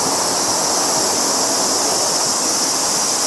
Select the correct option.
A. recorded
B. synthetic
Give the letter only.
A